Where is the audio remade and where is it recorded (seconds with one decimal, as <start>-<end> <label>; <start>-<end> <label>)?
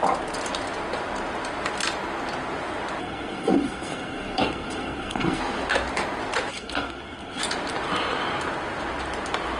0.0-3.0 recorded; 3.0-5.4 remade; 5.4-6.5 recorded; 6.5-7.4 remade; 7.4-9.6 recorded